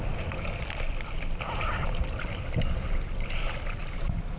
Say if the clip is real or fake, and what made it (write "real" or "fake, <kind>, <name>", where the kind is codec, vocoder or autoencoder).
real